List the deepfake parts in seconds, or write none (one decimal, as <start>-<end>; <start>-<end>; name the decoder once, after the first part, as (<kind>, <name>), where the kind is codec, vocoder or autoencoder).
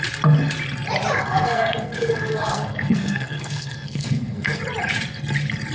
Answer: 1.2-4.6 (codec, SNAC)